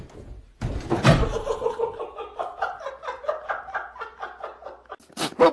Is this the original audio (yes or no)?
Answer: yes